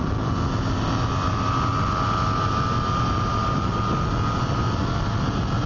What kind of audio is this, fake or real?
real